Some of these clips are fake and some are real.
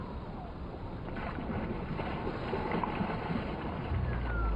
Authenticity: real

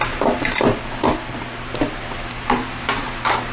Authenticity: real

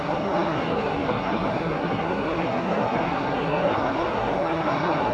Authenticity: fake